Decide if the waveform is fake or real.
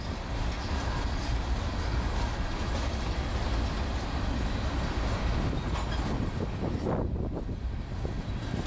real